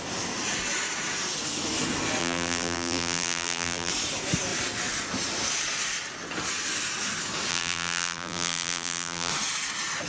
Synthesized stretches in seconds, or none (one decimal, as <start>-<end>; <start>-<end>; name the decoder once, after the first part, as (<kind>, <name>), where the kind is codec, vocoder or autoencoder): 2.2-3.9 (vocoder, BigVGAN v2); 7.5-9.3